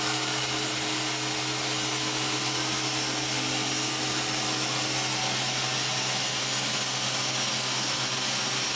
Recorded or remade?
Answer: recorded